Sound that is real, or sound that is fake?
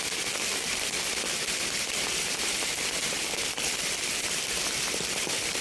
fake